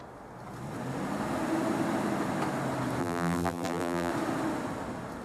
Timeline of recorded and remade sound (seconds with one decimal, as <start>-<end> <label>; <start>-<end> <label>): 0.0-3.0 recorded; 3.0-4.1 remade; 4.1-5.2 recorded